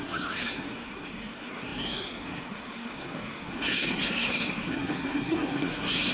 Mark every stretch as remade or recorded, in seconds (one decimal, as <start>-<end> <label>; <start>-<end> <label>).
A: 0.0-6.1 remade